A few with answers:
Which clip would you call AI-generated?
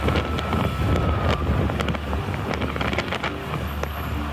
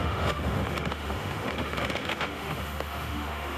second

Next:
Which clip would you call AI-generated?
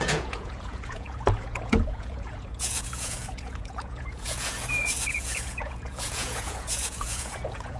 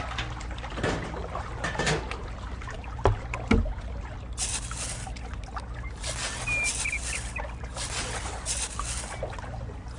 first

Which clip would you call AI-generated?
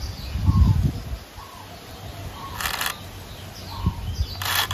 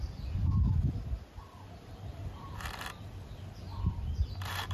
second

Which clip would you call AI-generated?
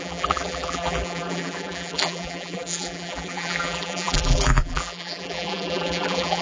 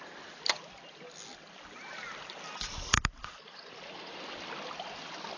first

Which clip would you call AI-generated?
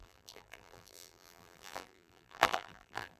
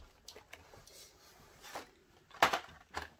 first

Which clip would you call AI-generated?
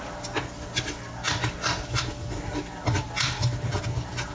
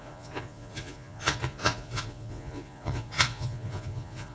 second